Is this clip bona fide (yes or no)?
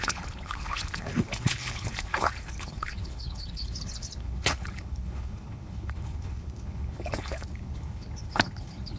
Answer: no